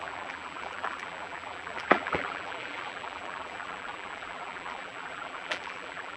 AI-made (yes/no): yes